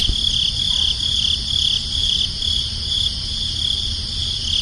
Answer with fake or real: real